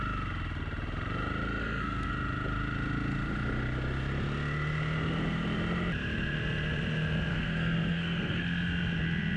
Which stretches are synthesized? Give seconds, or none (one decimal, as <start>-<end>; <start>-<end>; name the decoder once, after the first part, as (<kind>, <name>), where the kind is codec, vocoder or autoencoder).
1.6-2.1 (codec, SNAC); 7.3-8.4